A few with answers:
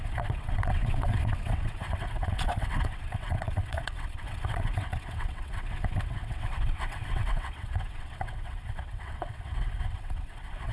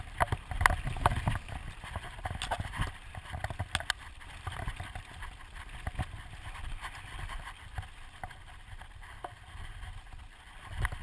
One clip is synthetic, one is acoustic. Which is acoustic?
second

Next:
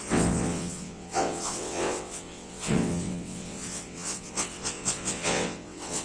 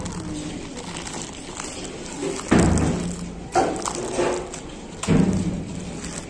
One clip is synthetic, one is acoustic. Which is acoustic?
second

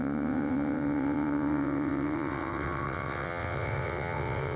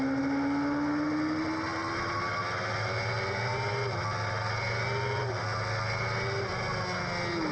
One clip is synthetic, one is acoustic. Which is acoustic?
second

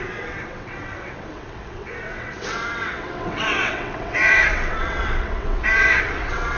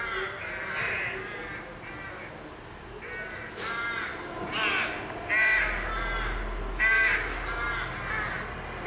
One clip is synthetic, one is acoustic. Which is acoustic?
second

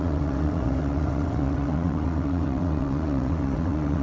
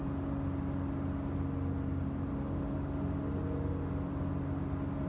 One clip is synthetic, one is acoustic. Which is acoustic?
second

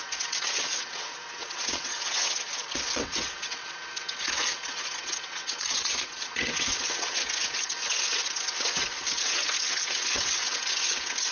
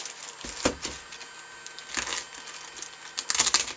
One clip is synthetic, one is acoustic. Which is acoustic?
second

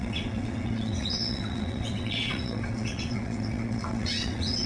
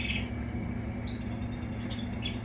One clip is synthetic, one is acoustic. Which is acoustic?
second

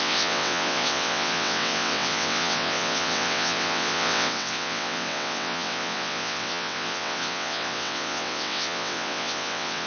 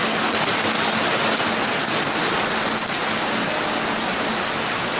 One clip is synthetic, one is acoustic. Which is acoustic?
second